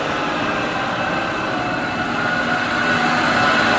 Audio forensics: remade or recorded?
recorded